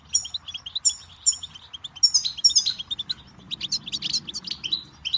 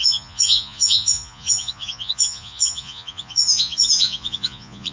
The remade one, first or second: second